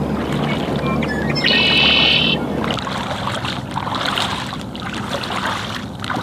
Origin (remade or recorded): recorded